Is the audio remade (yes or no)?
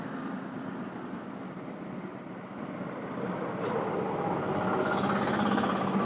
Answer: no